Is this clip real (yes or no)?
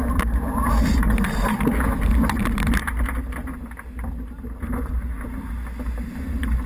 yes